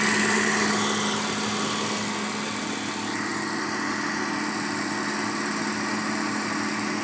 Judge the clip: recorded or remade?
recorded